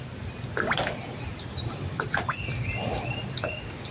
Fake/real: real